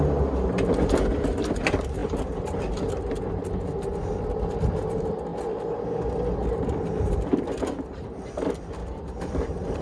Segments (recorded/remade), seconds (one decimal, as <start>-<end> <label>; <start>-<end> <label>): 0.0-8.8 recorded; 8.8-9.8 remade